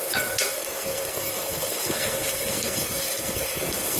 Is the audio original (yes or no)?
no